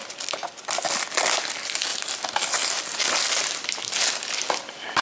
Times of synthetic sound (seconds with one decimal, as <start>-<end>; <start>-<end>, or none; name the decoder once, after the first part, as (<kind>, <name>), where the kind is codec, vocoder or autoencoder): none